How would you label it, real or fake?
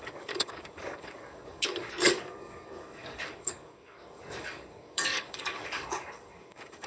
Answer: fake